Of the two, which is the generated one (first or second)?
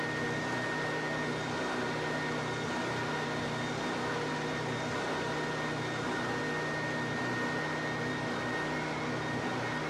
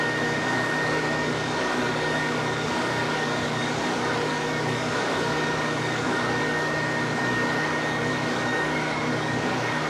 second